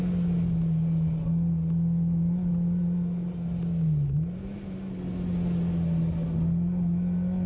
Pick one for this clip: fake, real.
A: real